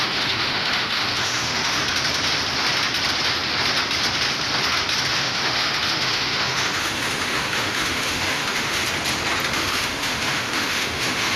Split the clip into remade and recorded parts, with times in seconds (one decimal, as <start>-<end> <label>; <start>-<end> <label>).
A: 0.0-1.8 remade; 1.8-5.1 recorded; 5.1-8.8 remade; 8.8-9.5 recorded; 9.5-11.4 remade